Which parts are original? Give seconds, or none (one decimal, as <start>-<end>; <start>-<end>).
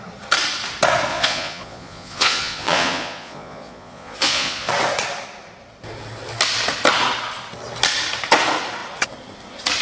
0.0-1.1; 4.7-9.8